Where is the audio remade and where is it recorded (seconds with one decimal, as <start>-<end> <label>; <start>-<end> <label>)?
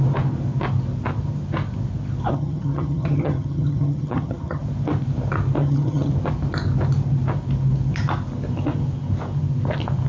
0.0-2.3 recorded; 2.3-4.6 remade; 4.6-5.6 recorded; 5.6-6.1 remade; 6.1-10.1 recorded